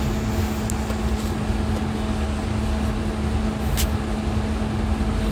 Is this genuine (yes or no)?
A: yes